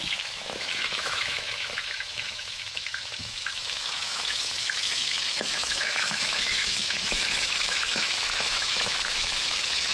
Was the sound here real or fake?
fake